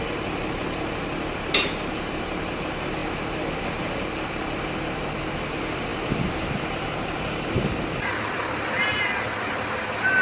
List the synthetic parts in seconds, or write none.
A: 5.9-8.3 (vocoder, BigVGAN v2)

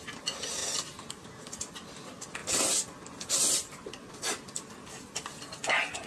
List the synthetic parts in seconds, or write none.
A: none